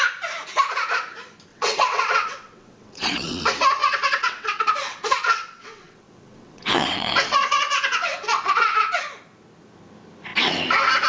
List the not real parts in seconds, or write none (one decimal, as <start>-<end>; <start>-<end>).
1.5-3.4; 3.8-9.0